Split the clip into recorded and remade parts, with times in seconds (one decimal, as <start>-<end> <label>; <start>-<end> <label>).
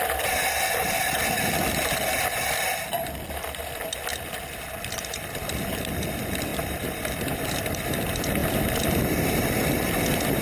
0.0-6.5 recorded; 6.5-8.0 remade; 8.0-10.4 recorded